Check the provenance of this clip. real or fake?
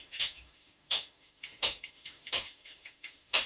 fake